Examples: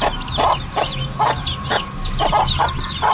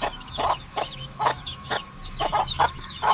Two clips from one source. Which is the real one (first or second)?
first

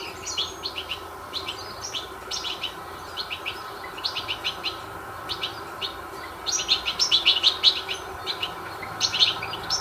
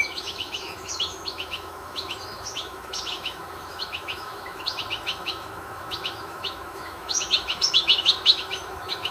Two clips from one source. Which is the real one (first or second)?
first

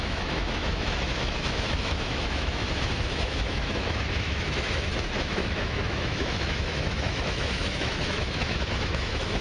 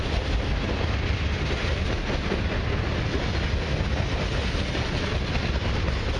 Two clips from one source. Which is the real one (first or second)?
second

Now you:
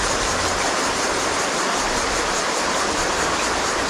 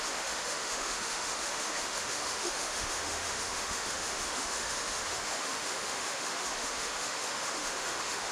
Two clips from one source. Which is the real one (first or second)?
first